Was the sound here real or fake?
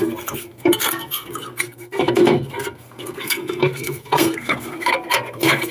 fake